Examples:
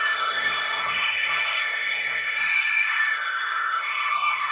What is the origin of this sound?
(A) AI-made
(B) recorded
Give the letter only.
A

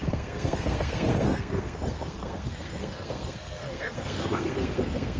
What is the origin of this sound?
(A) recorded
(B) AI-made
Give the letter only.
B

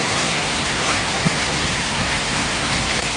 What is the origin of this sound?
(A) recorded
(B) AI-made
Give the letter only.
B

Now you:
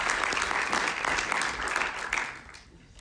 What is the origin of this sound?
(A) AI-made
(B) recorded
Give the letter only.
B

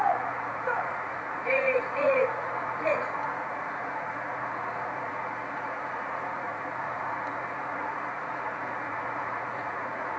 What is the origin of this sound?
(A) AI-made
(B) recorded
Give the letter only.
A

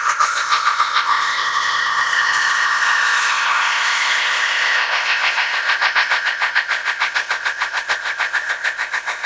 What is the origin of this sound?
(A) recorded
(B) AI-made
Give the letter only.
B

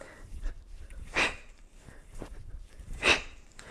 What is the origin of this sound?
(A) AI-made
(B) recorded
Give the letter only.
A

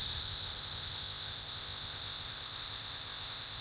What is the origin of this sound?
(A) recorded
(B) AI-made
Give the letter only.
B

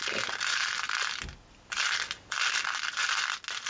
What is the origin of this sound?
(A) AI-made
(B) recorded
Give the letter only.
B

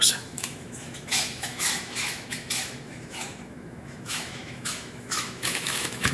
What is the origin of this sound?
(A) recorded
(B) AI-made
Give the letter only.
B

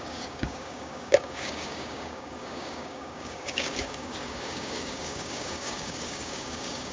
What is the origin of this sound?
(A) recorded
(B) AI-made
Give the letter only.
B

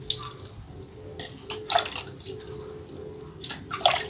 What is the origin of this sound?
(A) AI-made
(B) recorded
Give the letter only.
B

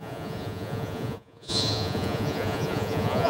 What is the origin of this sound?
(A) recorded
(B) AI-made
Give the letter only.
B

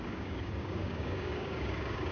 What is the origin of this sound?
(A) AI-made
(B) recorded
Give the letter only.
A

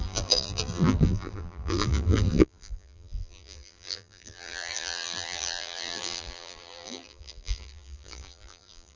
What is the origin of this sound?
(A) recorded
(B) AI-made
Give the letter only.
B